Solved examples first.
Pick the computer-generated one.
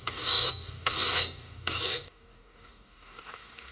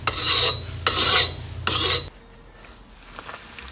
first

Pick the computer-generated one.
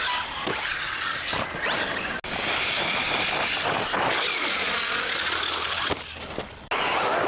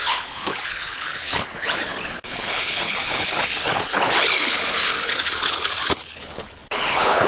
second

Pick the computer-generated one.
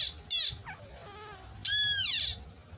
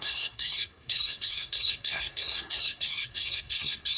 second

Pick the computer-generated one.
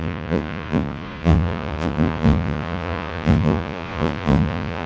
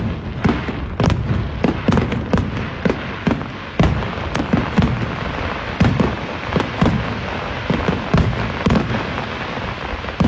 first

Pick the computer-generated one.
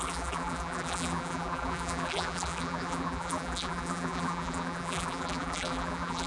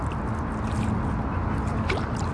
first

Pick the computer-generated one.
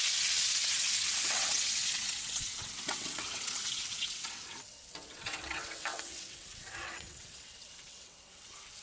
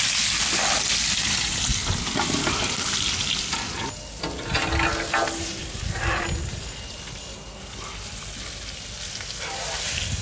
first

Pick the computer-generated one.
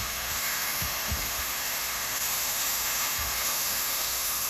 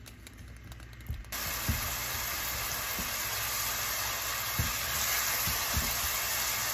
first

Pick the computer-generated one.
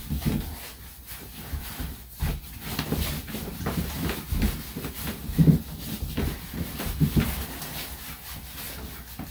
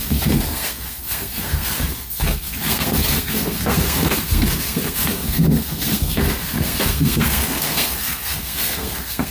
second